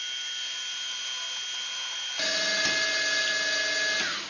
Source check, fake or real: real